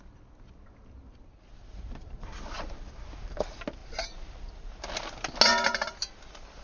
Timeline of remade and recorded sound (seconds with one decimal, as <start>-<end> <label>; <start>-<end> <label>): 0.0-6.6 recorded

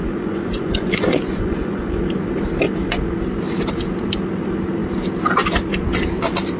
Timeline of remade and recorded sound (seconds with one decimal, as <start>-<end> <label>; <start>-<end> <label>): 0.0-2.0 remade; 2.0-6.6 recorded

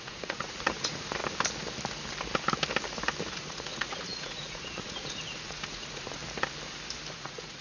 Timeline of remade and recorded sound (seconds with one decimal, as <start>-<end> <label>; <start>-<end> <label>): 0.0-1.2 remade; 1.2-3.2 recorded; 3.2-6.2 remade; 6.2-7.1 recorded; 7.1-7.6 remade

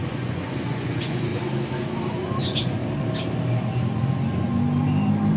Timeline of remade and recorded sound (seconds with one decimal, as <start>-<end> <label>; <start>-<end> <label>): 0.0-1.3 remade; 1.3-2.4 recorded; 2.4-2.8 remade; 2.8-5.4 recorded

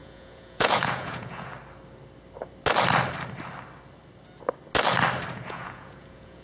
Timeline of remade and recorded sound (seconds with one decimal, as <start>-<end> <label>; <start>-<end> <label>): 0.0-1.5 remade; 1.5-5.3 recorded; 5.3-6.4 remade

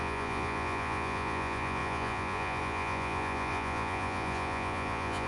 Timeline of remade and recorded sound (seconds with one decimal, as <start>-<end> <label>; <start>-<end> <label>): 0.0-5.3 remade

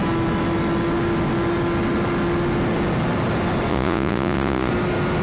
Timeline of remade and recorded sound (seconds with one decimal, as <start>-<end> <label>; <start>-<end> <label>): 0.0-3.7 recorded; 3.7-4.7 remade; 4.7-5.2 recorded